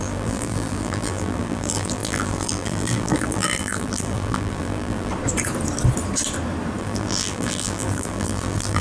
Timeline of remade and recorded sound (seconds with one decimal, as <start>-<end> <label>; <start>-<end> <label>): 0.0-5.1 remade; 5.1-6.8 recorded; 6.8-8.8 remade